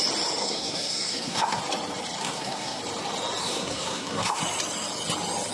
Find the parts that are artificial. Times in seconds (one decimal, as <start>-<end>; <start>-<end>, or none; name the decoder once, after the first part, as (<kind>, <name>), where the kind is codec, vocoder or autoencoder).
0.4-1.6 (codec, SNAC); 2.2-2.8; 3.4-4.4